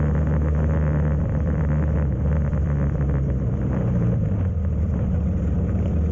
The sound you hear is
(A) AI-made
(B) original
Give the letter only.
A